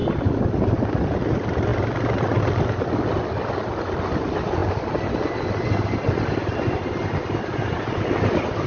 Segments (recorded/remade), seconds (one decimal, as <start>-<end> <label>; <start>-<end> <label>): 0.0-0.7 recorded; 0.7-4.6 remade; 4.6-8.7 recorded